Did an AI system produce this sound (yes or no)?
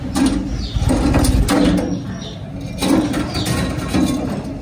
no